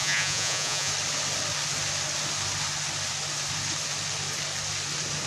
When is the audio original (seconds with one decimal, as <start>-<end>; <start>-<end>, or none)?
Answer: 0.9-5.3